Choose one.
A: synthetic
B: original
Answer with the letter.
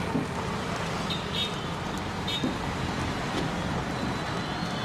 B